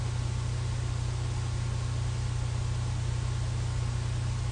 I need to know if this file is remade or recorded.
recorded